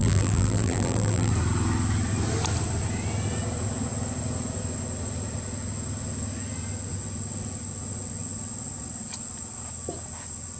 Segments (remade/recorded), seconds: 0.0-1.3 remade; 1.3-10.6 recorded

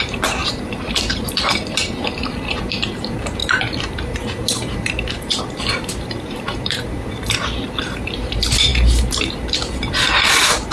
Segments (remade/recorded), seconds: 0.0-10.7 remade

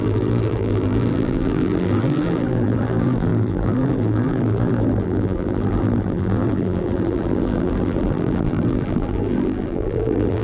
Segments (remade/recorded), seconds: 0.0-10.4 remade

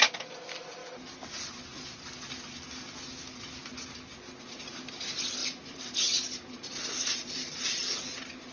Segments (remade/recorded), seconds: 0.0-5.4 recorded; 5.4-7.6 remade; 7.6-8.5 recorded